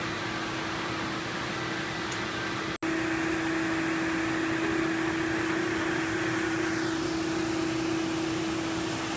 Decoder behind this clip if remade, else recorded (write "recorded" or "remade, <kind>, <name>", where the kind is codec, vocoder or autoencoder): recorded